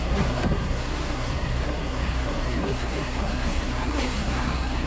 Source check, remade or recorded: remade